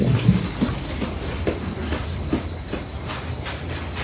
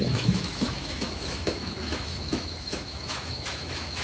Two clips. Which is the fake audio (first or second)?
second